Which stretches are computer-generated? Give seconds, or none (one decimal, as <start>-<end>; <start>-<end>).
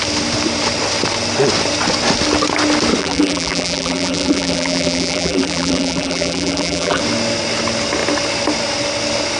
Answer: 3.0-7.0